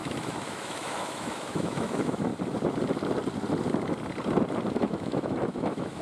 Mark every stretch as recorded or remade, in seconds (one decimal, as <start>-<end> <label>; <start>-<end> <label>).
0.0-2.3 remade; 2.3-4.7 recorded; 4.7-6.0 remade